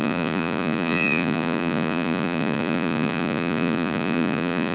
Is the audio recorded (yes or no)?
no